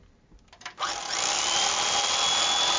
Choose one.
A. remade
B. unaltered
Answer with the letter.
B